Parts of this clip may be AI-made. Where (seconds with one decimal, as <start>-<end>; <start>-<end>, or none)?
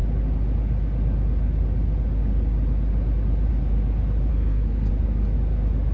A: 4.3-4.9